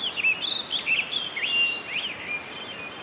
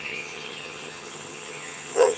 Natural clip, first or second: first